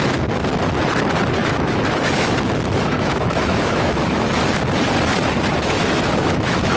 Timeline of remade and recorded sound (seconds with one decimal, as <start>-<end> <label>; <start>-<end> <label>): 0.0-1.4 recorded; 1.4-4.3 remade; 4.3-5.5 recorded; 5.5-6.8 remade